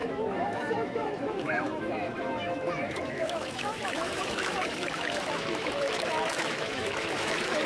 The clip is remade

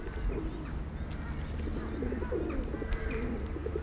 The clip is recorded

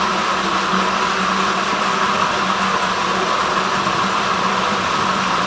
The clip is recorded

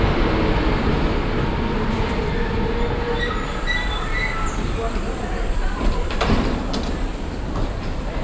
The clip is recorded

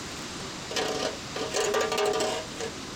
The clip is recorded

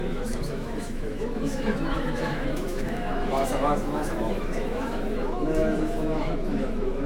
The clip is remade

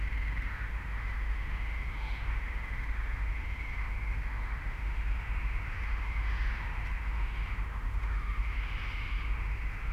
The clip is remade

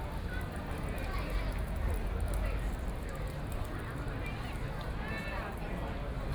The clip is recorded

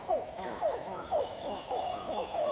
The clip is remade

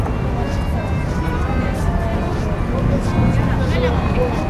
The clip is recorded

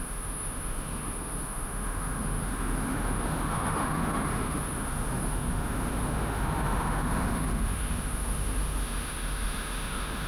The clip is remade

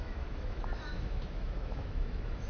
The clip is remade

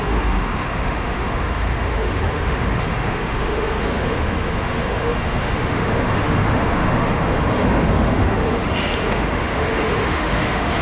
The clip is remade